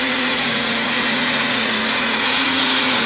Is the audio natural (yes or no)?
no